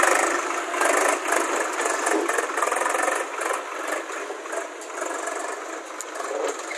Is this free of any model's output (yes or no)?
yes